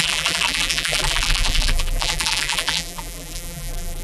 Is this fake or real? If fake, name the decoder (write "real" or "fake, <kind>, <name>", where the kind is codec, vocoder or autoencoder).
fake, vocoder, BigVGAN v2